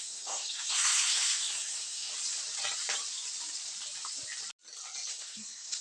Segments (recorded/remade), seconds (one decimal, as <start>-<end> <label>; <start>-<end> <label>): 0.0-2.1 remade; 2.1-5.1 recorded; 5.1-5.8 remade